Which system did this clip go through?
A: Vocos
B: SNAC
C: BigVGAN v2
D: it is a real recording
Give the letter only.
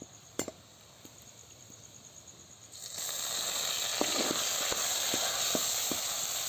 C